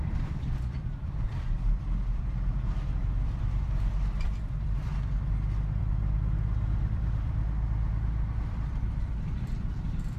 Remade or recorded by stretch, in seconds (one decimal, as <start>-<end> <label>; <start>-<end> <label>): 0.0-4.9 remade; 4.9-5.8 recorded; 5.8-10.2 remade